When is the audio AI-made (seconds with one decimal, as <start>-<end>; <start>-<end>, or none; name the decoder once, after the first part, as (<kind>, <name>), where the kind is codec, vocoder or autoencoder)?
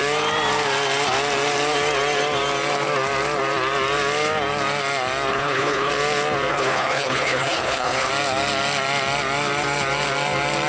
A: 5.3-5.9 (codec, HILCodec); 6.5-8.1